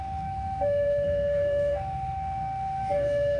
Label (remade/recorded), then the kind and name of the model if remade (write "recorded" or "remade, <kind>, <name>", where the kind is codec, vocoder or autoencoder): remade, codec, SNAC